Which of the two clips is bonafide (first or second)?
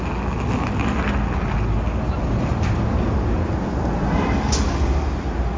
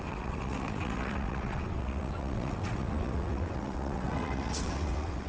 first